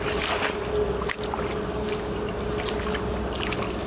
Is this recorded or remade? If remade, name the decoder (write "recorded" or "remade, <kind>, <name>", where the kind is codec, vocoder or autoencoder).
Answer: recorded